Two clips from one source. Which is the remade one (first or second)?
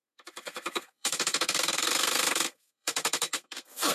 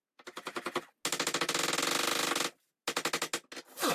first